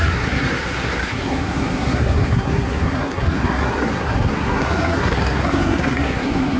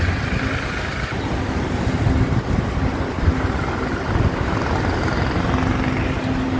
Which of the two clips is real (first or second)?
second